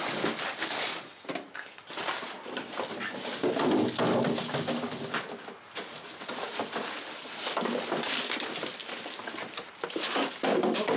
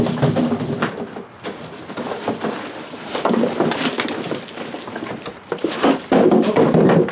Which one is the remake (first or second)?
second